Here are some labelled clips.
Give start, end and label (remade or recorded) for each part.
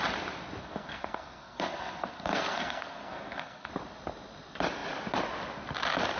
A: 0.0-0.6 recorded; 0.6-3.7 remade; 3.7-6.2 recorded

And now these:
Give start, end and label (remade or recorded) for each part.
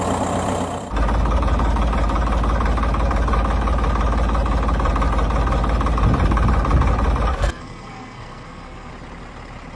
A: 0.0-7.3 recorded; 7.3-8.9 remade; 8.9-9.8 recorded